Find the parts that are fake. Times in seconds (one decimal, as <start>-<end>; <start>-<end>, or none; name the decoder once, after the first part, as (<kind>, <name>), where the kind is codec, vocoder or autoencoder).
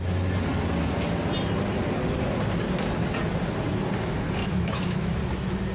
4.4-5.2 (autoencoder, DAC-VAE)